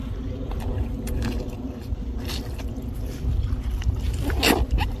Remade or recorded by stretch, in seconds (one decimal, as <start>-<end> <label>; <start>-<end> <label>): 0.0-5.0 recorded